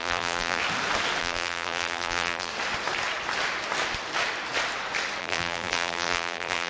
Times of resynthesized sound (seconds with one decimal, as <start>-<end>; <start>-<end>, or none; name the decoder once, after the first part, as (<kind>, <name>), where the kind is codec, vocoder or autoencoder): 0.0-0.6 (vocoder, BigVGAN v2); 1.2-2.5; 5.2-6.7